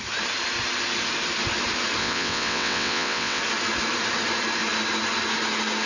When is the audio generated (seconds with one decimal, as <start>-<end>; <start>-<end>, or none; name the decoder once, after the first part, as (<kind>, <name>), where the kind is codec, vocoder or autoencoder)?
2.0-3.4 (vocoder, WaveNeXt)